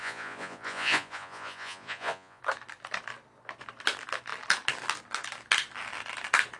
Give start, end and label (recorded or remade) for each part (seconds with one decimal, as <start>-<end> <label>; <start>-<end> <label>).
0.0-2.4 remade; 2.4-6.6 recorded